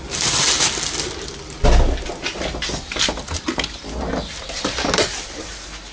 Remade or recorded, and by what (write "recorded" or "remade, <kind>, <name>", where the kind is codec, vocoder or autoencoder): recorded